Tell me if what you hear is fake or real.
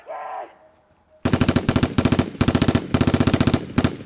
real